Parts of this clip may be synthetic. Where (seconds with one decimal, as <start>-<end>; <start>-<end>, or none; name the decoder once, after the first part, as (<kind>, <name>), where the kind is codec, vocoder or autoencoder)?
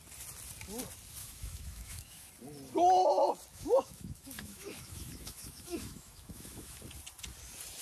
1.2-2.3 (autoencoder, DAC-VAE); 3.5-6.8